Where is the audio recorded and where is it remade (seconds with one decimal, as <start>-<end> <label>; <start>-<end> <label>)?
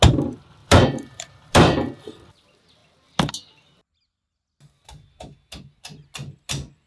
0.0-0.6 recorded; 0.6-1.9 remade; 1.9-6.9 recorded